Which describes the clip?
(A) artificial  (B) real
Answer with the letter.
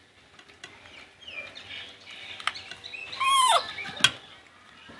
B